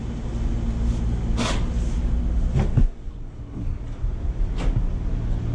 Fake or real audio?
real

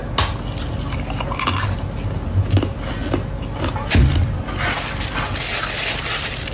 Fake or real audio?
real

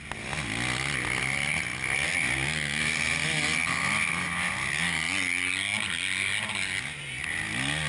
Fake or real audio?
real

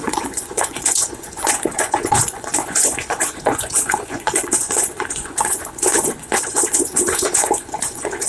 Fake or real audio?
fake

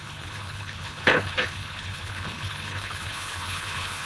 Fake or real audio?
fake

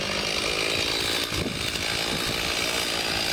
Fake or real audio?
real